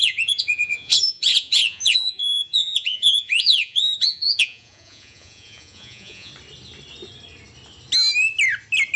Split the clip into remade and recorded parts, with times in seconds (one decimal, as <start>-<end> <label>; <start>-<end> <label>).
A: 0.0-6.3 remade; 6.3-9.0 recorded